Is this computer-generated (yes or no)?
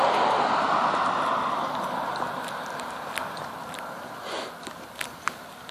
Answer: no